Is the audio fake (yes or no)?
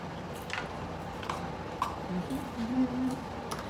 yes